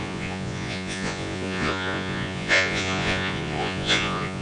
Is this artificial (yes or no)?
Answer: yes